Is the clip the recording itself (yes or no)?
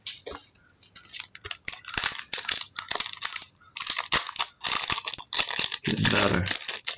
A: yes